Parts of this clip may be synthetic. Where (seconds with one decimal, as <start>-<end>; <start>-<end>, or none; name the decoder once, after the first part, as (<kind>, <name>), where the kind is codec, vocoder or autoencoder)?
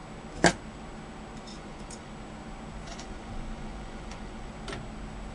1.5-2.1 (vocoder, Vocos); 2.9-4.5